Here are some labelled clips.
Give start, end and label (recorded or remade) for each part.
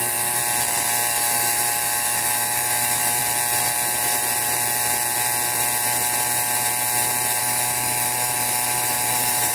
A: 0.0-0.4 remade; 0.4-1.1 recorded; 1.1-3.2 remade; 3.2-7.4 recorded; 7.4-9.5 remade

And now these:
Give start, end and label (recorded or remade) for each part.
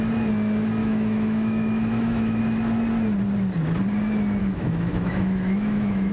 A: 0.0-0.8 recorded; 0.8-2.4 remade; 2.4-4.4 recorded; 4.4-6.1 remade